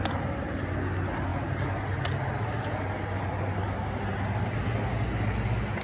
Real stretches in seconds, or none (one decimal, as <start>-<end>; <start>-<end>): 0.0-5.8

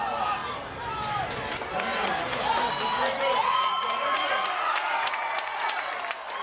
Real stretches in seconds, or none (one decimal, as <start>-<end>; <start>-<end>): 0.0-3.4; 5.9-6.4